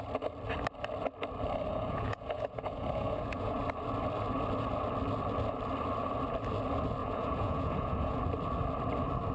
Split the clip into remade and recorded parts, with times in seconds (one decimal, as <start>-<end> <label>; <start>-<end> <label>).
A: 0.0-1.7 recorded; 1.7-3.6 remade; 3.6-7.0 recorded; 7.0-8.2 remade; 8.2-9.3 recorded

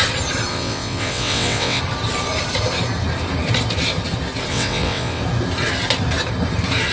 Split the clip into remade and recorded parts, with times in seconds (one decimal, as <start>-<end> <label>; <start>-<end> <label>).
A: 0.0-0.5 recorded; 0.5-1.8 remade; 1.8-4.5 recorded; 4.5-5.2 remade; 5.2-6.9 recorded

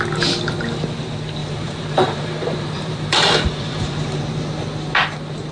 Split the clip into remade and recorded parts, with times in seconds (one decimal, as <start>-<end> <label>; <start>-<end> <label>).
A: 0.0-1.4 recorded; 1.4-4.2 remade; 4.2-5.5 recorded

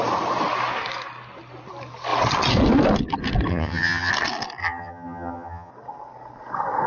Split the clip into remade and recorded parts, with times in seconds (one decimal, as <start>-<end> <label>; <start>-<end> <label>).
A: 0.0-3.5 recorded; 3.5-4.1 remade; 4.1-4.6 recorded; 4.6-5.7 remade; 5.7-6.9 recorded

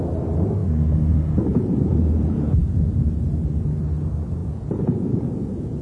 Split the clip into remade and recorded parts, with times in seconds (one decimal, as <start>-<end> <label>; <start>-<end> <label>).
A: 0.0-1.5 recorded; 1.5-3.4 remade; 3.4-4.4 recorded; 4.4-5.8 remade

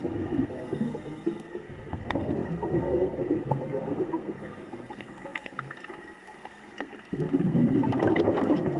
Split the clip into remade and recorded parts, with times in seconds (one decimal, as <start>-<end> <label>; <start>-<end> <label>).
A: 0.0-8.8 remade

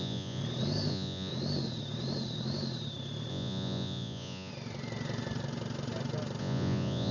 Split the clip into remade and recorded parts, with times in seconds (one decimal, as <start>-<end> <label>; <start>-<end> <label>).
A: 0.0-0.4 remade; 0.4-0.9 recorded; 0.9-1.3 remade; 1.3-3.3 recorded; 3.3-4.5 remade; 4.5-6.4 recorded; 6.4-7.1 remade

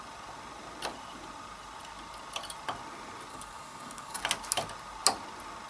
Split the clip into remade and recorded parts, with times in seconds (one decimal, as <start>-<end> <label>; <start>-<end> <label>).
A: 0.0-3.3 recorded; 3.3-4.2 remade; 4.2-5.7 recorded